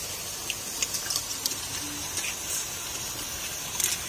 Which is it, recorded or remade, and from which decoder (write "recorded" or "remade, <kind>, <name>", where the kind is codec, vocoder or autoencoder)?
recorded